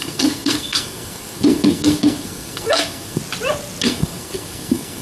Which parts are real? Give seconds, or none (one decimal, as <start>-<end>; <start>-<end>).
3.2-3.8